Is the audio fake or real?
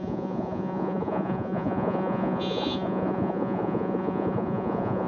fake